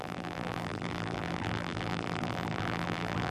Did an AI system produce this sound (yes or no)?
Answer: yes